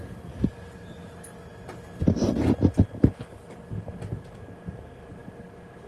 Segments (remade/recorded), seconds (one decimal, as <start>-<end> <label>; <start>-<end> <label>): 0.0-5.9 recorded